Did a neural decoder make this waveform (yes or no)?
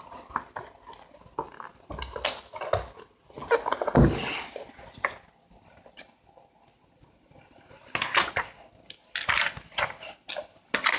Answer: no